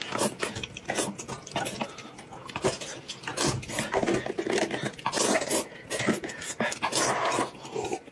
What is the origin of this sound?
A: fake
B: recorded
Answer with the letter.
B